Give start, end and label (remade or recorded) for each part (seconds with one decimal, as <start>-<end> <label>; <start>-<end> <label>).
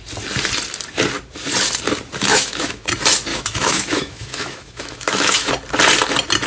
0.0-2.3 recorded; 2.3-2.9 remade; 2.9-3.3 recorded; 3.3-5.5 remade; 5.5-6.5 recorded